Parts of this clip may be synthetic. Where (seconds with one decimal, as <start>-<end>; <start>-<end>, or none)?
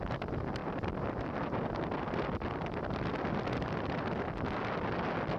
none